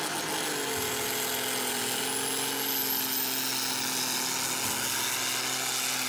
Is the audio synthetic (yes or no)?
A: no